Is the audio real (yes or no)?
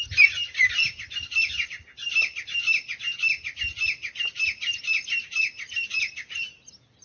yes